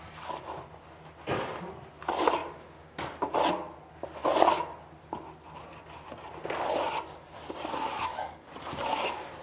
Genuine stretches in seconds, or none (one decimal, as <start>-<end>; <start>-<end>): 0.0-7.9; 8.5-9.4